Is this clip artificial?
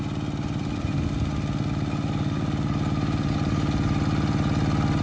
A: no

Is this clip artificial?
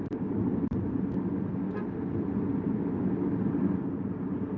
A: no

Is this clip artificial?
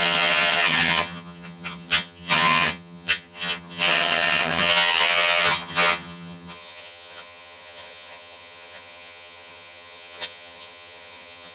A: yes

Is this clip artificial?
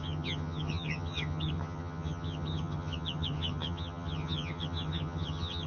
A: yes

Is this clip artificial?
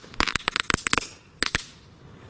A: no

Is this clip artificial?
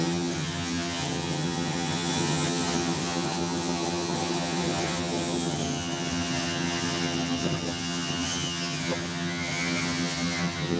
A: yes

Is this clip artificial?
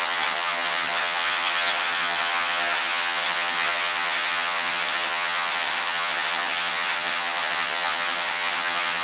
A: yes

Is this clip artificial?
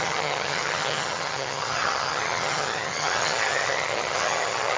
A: yes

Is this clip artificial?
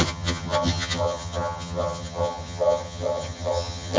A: yes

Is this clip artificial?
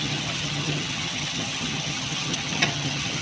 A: yes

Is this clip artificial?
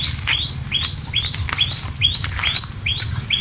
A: no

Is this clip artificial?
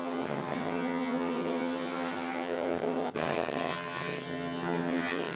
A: yes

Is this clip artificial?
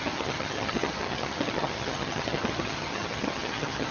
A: yes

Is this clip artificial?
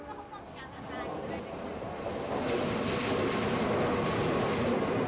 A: no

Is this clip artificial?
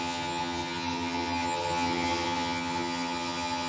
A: yes